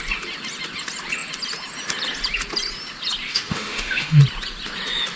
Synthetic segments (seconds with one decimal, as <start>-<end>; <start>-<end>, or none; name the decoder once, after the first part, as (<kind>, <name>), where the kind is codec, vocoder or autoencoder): 3.3-4.2 (autoencoder, DAC-VAE)